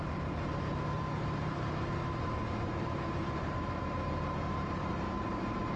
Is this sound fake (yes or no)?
yes